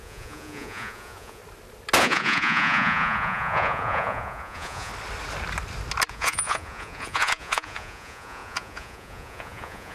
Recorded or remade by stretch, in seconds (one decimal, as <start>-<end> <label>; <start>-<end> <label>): 0.0-1.4 remade; 1.4-2.0 recorded; 2.0-4.9 remade; 4.9-6.1 recorded; 6.1-9.9 remade